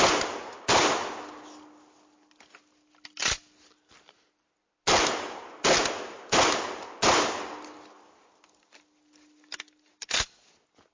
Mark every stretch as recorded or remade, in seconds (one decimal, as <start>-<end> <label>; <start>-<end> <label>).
0.0-10.9 recorded